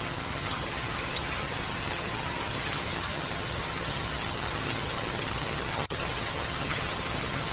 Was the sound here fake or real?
fake